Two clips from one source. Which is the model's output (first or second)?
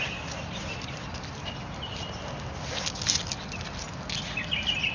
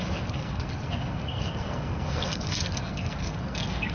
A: second